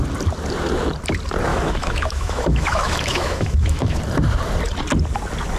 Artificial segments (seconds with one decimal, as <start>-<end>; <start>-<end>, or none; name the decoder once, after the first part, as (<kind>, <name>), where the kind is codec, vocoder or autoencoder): 1.5-4.0 (autoencoder, DAC-VAE)